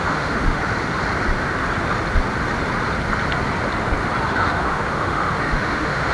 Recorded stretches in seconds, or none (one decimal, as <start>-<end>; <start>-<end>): 0.6-4.3

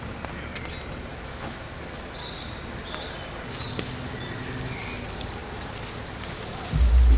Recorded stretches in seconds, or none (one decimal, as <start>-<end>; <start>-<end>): 0.0-1.1; 1.6-7.2

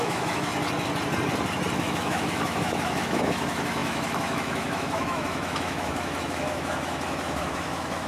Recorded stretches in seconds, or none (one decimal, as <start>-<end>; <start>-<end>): 0.5-1.8

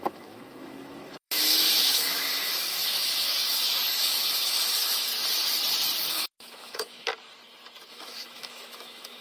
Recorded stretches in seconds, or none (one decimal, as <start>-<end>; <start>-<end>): 5.1-6.1; 7.1-7.9

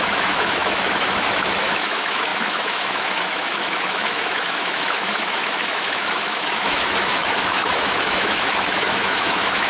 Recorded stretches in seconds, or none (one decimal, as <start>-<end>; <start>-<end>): none

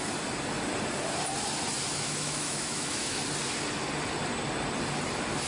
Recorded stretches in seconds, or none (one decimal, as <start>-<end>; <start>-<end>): 0.0-1.9; 3.2-5.5

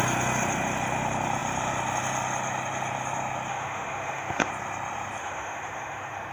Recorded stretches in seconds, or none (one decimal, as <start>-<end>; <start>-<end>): 0.0-3.5; 4.5-5.2